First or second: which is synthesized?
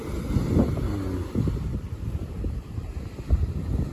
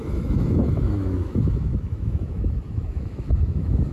second